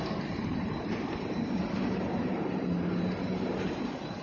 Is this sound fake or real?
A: fake